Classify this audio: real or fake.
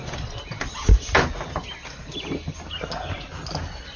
real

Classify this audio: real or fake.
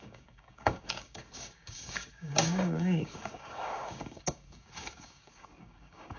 fake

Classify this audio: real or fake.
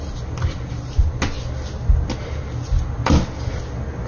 real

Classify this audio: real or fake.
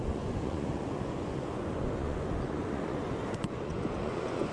fake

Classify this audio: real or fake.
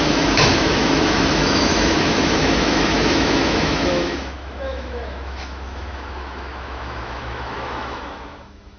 fake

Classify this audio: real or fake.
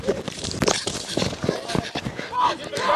fake